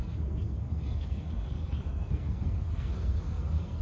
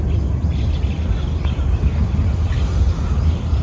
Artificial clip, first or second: first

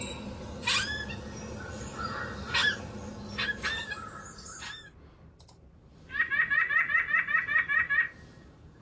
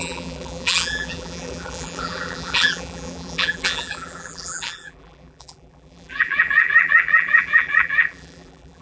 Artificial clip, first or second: second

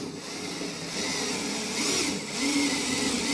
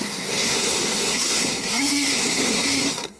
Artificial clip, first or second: second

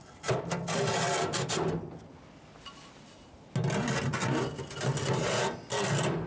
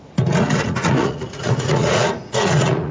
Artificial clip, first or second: second